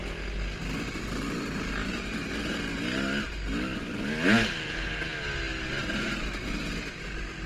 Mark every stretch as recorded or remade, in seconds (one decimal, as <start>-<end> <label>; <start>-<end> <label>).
0.0-7.5 recorded